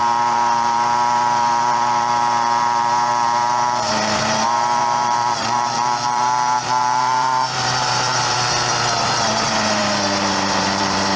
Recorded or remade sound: remade